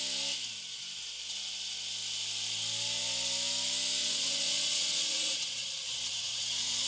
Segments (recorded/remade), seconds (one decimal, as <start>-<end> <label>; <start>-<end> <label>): 0.0-4.0 recorded; 4.0-6.9 remade